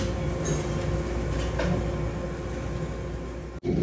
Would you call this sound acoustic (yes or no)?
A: yes